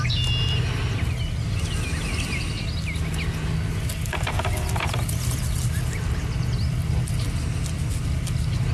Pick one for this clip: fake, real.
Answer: real